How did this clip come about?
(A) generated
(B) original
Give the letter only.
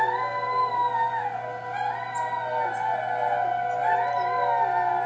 B